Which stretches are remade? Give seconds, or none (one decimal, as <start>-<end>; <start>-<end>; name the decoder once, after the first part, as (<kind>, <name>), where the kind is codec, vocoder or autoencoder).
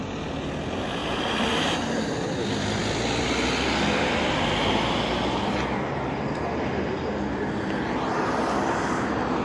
none